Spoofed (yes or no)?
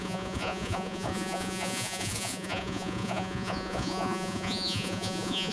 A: yes